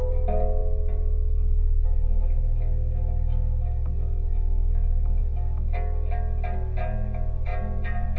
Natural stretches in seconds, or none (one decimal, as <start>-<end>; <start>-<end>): 0.0-8.2